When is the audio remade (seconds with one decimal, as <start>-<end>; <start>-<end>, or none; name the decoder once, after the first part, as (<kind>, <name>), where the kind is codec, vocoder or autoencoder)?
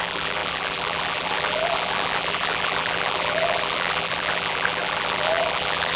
0.0-6.0 (vocoder, BigVGAN v2)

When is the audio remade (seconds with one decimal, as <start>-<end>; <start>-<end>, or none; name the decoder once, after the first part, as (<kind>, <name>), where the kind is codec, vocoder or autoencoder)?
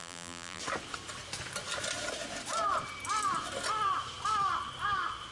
0.0-0.6 (vocoder, BigVGAN v2)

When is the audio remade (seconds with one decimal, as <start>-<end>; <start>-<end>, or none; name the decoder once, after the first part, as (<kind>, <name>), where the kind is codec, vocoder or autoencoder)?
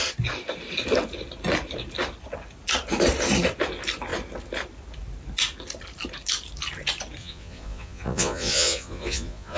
7.2-9.6 (vocoder, Vocos)